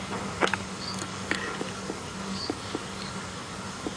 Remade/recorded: remade